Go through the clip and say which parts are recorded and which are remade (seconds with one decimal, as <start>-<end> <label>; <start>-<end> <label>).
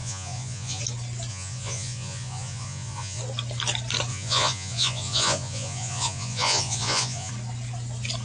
0.0-0.8 remade; 0.8-1.3 recorded; 1.3-3.2 remade; 3.2-4.1 recorded; 4.1-7.3 remade; 7.3-8.2 recorded